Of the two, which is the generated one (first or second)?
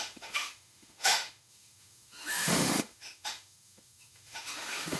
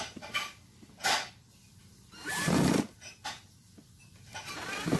first